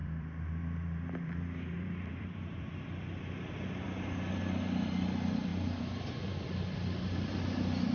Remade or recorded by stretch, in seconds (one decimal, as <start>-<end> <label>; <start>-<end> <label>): 0.0-3.1 remade; 3.1-5.5 recorded; 5.5-6.4 remade; 6.4-7.9 recorded